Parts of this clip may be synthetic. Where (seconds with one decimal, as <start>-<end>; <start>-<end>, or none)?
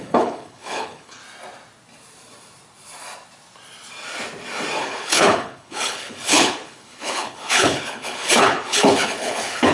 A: 0.0-1.2; 4.8-9.7